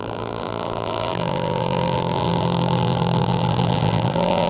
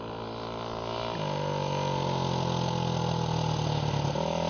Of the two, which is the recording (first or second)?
second